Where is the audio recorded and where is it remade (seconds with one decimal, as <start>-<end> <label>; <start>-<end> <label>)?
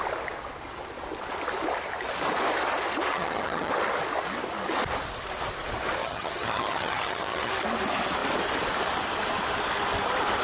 0.0-3.1 recorded; 3.1-3.7 remade; 3.7-6.0 recorded; 6.0-7.5 remade; 7.5-10.4 recorded